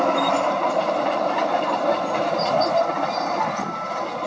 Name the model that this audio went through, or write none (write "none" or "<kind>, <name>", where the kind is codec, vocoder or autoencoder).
none